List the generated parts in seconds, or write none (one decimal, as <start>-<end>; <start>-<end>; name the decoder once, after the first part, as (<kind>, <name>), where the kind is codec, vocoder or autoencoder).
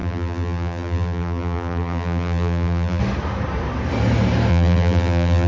0.0-3.0 (vocoder, BigVGAN v2); 4.5-5.5